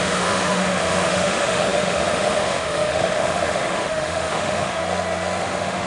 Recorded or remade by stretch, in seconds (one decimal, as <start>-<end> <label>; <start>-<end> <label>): 0.0-4.8 remade; 4.8-5.4 recorded; 5.4-5.9 remade